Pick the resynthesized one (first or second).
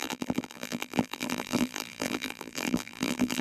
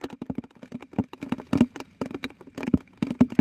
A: first